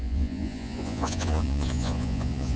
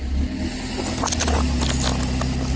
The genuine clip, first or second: second